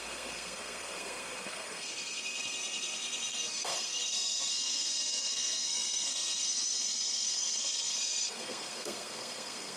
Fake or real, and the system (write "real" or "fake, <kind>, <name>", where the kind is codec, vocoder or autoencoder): fake, codec, SNAC